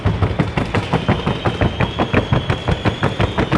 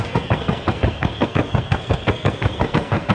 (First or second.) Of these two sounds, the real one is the first